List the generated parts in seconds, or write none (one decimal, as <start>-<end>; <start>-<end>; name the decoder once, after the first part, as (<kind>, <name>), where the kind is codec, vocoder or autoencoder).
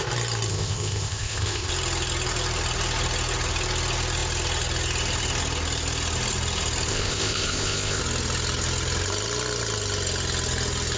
0.5-1.7 (codec, ZipCodec); 6.9-8.0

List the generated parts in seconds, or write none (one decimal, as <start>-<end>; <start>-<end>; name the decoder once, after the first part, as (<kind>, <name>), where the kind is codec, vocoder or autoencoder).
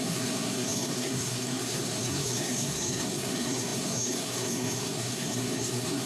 0.0-6.1 (codec, SNAC)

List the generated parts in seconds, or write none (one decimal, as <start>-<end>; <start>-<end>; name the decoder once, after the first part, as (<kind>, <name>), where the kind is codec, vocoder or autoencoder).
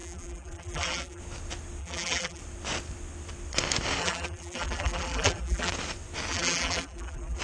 0.0-1.2 (vocoder, BigVGAN v2); 1.8-2.4; 4.0-5.7; 6.3-7.4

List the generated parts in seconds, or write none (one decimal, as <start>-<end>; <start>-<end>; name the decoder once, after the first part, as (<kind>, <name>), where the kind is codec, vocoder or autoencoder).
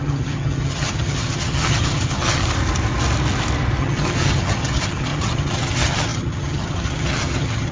0.0-2.4 (vocoder, HiFi-GAN); 3.8-7.7